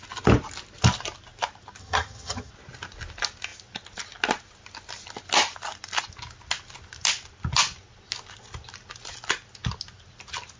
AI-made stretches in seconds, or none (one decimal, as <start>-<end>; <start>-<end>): 1.8-2.5